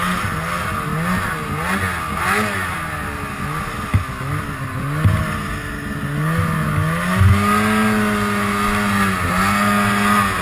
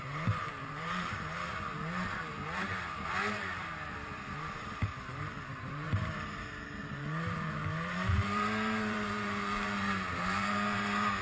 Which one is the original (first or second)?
first